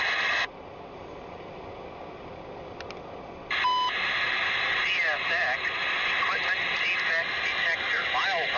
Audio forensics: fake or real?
real